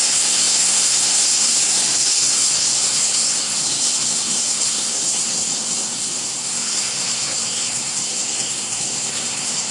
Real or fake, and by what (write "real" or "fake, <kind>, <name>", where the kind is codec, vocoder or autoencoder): fake, codec, SNAC